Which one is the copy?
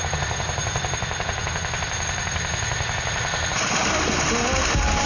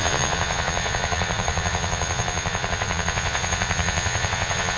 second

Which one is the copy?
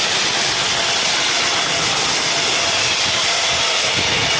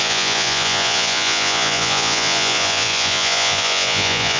second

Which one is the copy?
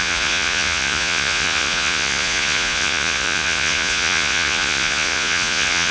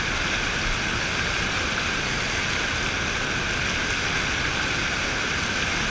first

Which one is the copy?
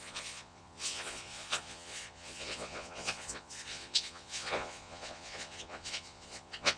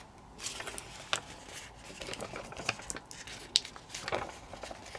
first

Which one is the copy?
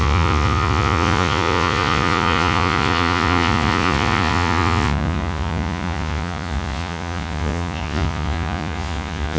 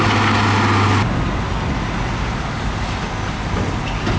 first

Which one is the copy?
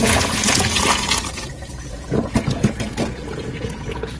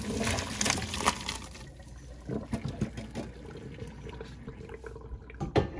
first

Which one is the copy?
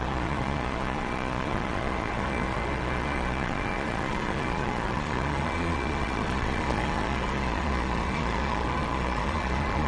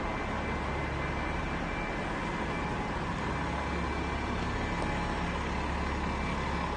first